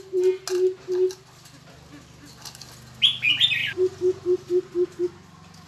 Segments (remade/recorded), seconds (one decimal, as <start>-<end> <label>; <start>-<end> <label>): 0.0-5.7 recorded